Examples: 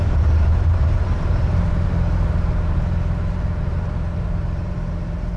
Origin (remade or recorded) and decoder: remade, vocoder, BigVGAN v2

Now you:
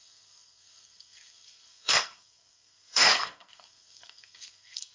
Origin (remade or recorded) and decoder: remade, codec, SNAC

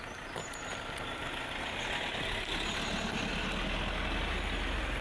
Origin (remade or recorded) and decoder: recorded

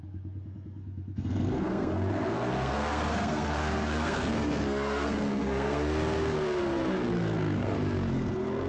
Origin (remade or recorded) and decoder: remade, codec, SNAC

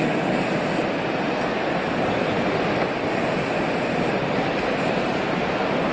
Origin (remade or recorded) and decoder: recorded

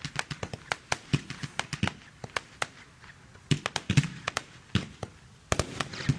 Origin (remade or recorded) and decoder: recorded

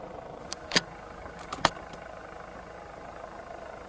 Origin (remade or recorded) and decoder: remade, vocoder, BigVGAN v2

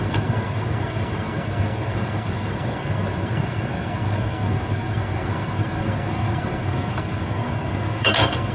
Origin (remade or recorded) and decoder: remade, codec, SNAC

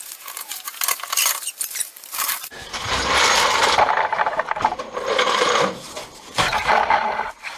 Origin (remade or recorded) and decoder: remade, vocoder, BigVGAN v2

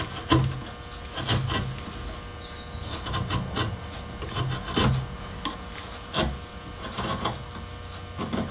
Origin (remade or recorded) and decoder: recorded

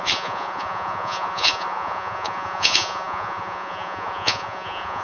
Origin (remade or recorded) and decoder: remade, vocoder, Vocos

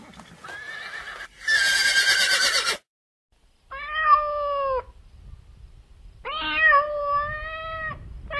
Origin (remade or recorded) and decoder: recorded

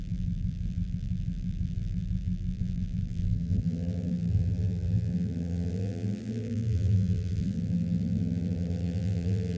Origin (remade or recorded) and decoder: remade, vocoder, BigVGAN v2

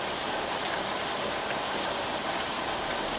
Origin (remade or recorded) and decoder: recorded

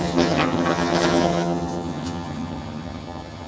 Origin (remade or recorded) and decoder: remade, vocoder, HiFi-GAN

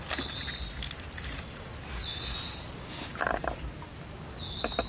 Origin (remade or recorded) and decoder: recorded